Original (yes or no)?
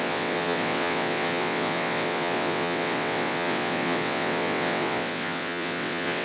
no